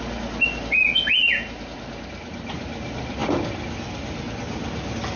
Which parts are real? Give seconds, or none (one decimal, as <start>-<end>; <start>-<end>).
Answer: 0.0-5.2